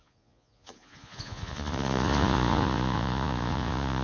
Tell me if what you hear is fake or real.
fake